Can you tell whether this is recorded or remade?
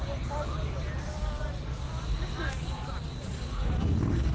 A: recorded